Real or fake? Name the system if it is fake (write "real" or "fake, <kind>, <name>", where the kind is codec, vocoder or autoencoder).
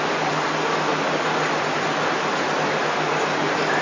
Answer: real